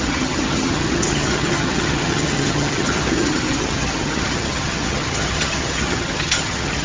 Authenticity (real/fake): fake